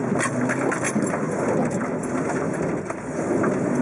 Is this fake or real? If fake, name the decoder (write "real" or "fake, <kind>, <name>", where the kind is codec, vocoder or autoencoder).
real